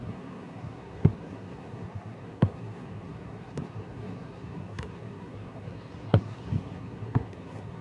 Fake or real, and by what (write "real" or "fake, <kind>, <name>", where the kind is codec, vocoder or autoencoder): fake, codec, SNAC